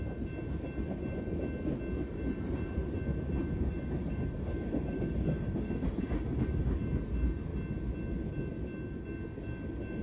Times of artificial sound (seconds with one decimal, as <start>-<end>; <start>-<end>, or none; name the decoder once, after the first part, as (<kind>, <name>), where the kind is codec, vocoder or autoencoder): 4.0-6.8 (codec, DAC)